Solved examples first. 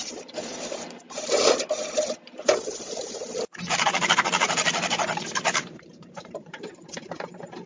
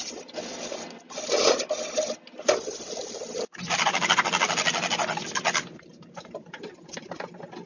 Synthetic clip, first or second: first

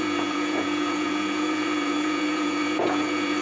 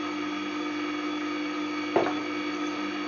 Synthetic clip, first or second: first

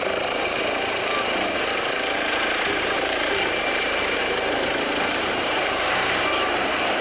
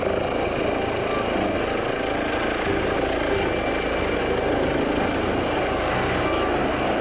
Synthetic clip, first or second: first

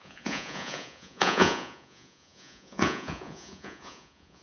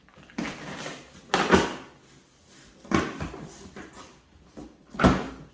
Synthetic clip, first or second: first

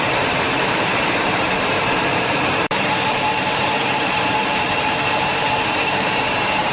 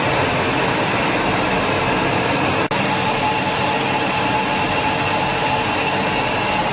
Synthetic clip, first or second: first